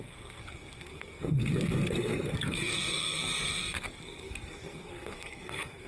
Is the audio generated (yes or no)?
yes